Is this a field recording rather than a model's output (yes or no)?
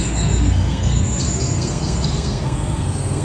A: no